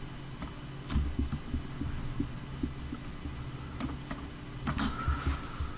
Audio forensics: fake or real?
real